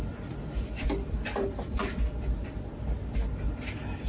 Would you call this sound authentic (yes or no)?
no